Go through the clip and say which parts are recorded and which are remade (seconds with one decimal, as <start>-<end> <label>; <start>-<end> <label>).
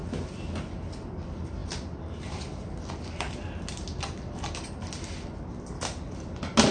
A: 0.0-6.7 recorded